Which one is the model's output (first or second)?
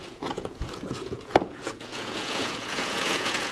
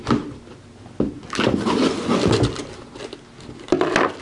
first